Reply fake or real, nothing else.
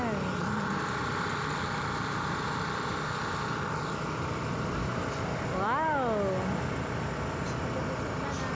real